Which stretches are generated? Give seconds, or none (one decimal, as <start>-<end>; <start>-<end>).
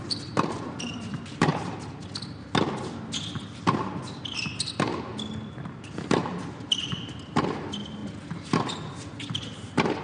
0.0-1.5; 4.5-5.1; 5.6-10.0